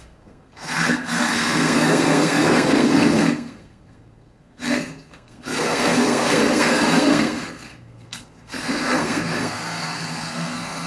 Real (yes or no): no